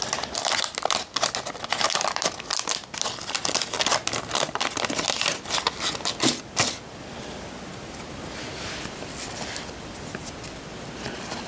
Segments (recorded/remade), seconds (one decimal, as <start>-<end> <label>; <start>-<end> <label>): 0.0-11.5 recorded